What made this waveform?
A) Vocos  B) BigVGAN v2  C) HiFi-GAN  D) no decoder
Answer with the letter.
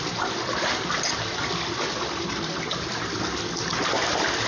D